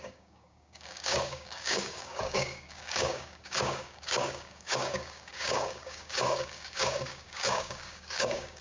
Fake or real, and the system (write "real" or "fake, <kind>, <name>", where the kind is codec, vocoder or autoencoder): fake, codec, DAC